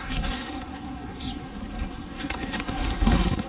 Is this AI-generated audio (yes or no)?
yes